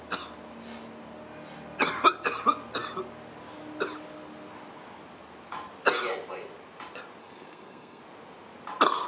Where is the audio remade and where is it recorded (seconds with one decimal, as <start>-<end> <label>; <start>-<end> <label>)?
0.0-7.2 recorded; 7.2-8.0 remade; 8.0-9.1 recorded